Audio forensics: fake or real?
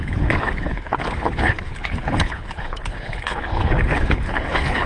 fake